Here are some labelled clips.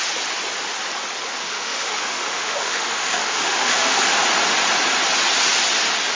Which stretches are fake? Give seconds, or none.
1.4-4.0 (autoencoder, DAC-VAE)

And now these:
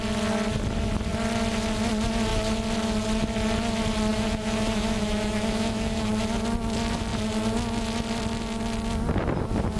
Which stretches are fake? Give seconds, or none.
4.1-6.1 (autoencoder, DAC-VAE)

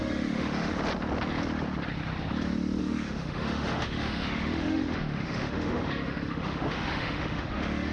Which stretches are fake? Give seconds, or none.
0.0-0.7 (autoencoder, DAC-VAE); 2.8-7.9

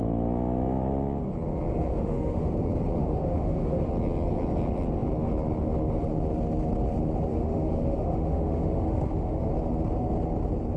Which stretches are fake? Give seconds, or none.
1.9-2.5 (autoencoder, DAC-VAE); 3.0-3.9; 7.3-9.5

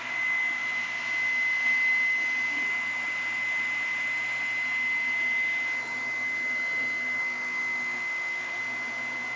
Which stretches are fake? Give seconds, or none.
7.2-8.6 (autoencoder, DAC-VAE)

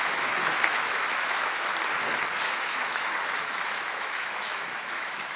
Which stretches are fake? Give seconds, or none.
0.0-1.7 (autoencoder, DAC-VAE); 2.3-5.4